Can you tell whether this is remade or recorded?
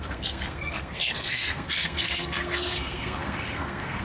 remade